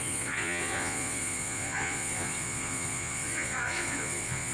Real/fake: fake